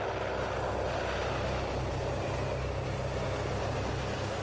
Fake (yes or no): no